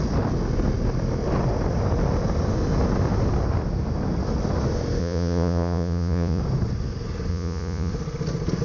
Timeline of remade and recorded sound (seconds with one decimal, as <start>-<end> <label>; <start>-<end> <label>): 0.0-5.0 recorded; 5.0-6.4 remade; 6.4-7.3 recorded; 7.3-7.9 remade; 7.9-8.6 recorded